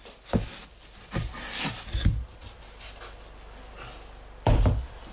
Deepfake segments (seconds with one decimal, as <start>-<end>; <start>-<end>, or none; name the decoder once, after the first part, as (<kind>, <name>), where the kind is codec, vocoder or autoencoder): none